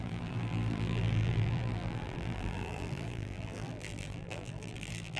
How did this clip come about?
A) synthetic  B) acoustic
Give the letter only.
A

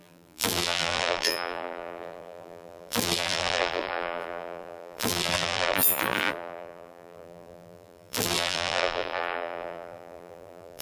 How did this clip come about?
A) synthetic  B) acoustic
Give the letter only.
A